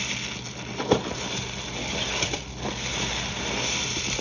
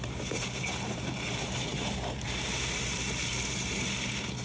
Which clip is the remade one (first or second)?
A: second